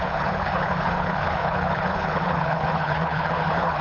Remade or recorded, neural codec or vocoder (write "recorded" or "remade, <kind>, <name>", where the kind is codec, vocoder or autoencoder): remade, codec, HILCodec